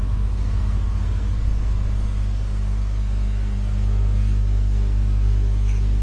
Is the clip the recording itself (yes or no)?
no